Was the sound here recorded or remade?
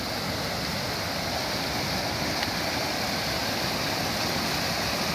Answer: recorded